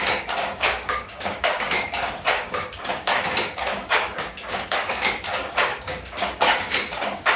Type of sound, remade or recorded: remade